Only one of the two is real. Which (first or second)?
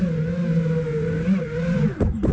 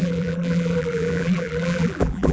first